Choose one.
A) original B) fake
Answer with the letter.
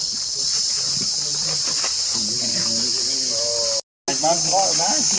A